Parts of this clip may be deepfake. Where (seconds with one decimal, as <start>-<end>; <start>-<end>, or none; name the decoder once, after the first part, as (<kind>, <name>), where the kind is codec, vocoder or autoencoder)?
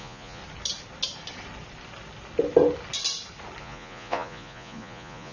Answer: 0.0-0.4 (vocoder, Vocos); 3.6-5.3